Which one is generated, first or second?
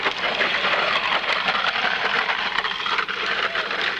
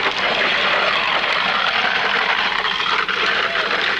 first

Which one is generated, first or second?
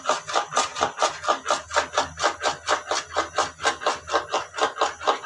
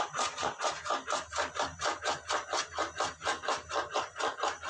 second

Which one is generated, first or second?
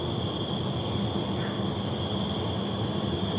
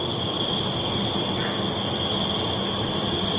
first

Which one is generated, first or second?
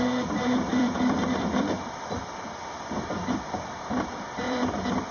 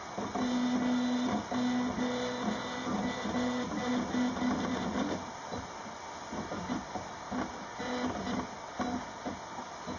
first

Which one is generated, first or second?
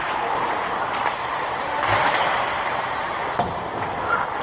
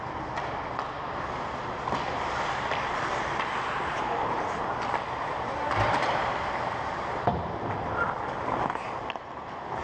first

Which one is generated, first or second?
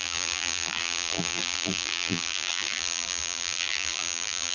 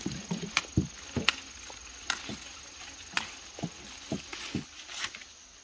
first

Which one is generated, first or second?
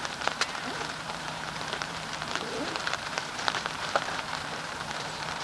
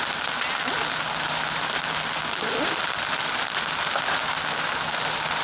first